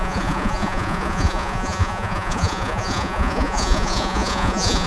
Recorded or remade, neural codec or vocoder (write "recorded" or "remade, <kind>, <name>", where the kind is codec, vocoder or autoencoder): remade, vocoder, Vocos